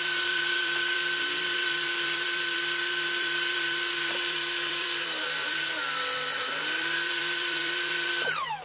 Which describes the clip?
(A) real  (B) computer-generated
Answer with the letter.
B